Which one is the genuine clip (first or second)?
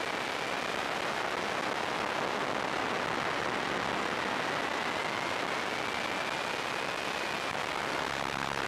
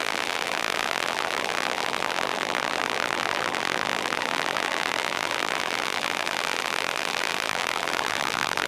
first